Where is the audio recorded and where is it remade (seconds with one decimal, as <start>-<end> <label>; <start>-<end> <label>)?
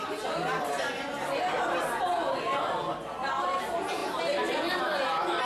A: 0.0-5.4 recorded